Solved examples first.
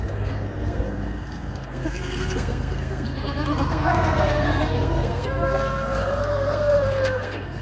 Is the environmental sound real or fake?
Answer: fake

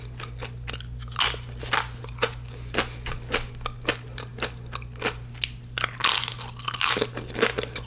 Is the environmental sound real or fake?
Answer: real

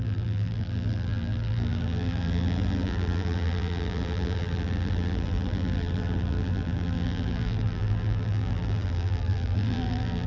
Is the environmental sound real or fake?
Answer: fake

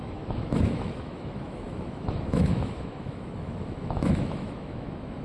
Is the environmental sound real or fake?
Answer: fake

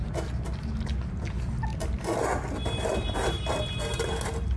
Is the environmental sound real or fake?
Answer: real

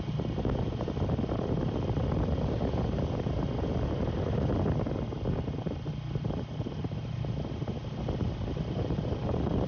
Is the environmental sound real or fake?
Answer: real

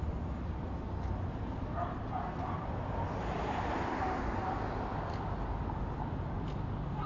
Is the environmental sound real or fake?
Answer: real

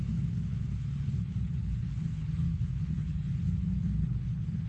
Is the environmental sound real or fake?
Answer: fake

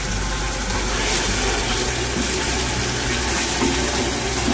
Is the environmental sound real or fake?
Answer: real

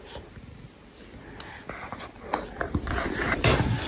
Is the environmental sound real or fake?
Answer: real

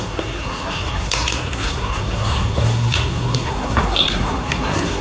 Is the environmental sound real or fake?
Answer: fake